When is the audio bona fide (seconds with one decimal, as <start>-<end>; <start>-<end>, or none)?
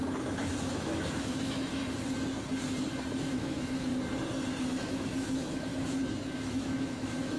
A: 1.8-3.2; 3.9-4.8; 5.7-6.2